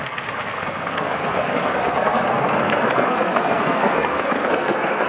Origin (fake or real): fake